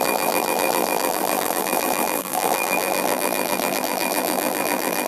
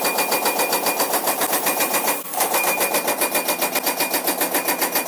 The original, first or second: second